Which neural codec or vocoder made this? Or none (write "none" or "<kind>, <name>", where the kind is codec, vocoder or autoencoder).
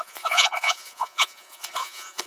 vocoder, Vocos